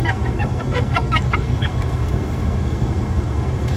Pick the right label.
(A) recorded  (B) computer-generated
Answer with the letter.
B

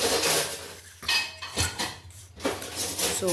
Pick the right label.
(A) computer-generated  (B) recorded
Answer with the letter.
B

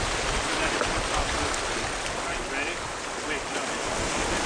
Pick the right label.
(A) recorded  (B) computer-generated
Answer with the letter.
A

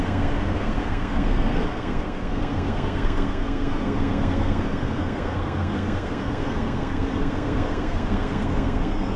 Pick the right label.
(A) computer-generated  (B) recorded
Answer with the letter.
A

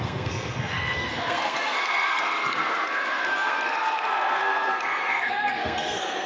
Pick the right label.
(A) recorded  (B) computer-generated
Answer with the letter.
B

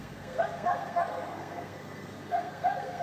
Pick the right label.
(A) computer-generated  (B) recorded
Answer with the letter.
A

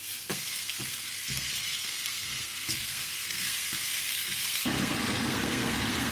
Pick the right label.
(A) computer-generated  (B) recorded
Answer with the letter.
A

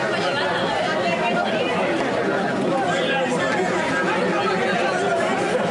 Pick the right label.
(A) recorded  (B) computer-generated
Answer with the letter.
A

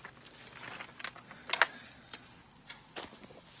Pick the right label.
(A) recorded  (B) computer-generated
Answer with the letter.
A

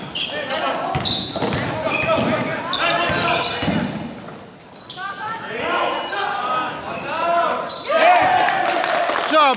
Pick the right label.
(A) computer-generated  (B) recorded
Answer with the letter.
B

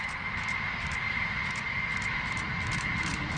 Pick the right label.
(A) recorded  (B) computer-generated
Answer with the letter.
A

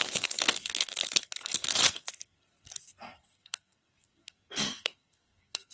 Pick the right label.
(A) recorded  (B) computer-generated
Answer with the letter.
B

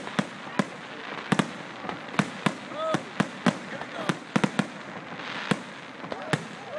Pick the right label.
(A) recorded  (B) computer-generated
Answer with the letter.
A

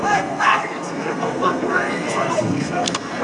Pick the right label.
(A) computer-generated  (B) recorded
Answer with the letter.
A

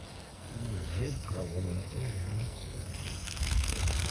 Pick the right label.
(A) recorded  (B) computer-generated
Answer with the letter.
B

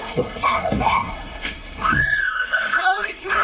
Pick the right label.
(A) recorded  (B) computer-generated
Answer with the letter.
B